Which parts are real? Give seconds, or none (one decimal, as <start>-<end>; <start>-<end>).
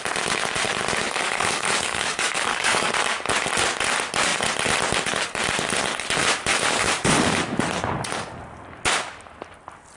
0.0-1.0; 2.9-6.5; 7.4-10.0